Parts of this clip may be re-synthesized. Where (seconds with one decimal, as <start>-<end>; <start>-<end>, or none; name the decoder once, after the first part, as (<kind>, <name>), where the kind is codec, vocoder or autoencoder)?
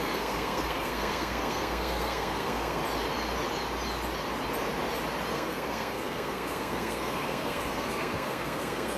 0.0-2.8 (codec, SNAC); 5.3-9.0